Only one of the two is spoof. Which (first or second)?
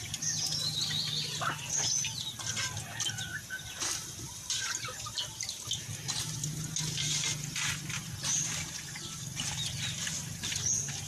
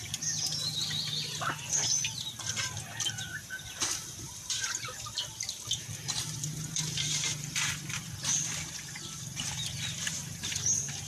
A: second